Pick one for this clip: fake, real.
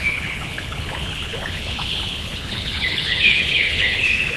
fake